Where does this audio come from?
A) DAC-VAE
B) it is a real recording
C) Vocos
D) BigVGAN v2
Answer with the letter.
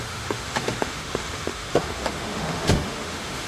A